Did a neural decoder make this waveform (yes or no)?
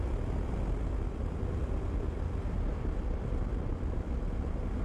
no